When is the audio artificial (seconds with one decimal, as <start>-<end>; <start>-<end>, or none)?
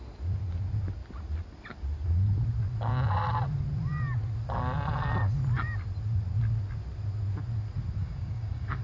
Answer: 8.0-8.8